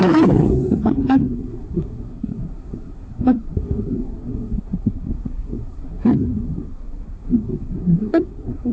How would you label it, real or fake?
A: fake